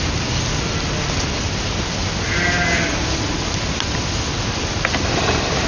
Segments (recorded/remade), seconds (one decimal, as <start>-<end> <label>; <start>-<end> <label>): 0.0-2.0 remade; 2.0-4.7 recorded; 4.7-5.7 remade